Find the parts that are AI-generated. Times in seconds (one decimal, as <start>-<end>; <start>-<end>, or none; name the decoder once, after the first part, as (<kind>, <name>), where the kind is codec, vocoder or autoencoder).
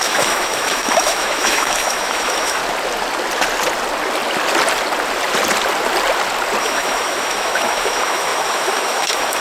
0.0-2.6 (autoencoder, DAC-VAE); 6.6-9.4